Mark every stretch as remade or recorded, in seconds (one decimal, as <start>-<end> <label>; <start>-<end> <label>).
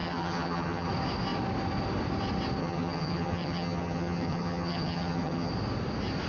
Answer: 0.0-0.9 remade; 0.9-2.6 recorded; 2.6-5.5 remade; 5.5-6.3 recorded